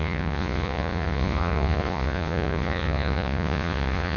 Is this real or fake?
fake